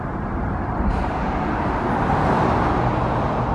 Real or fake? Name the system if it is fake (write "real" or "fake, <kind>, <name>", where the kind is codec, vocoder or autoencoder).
real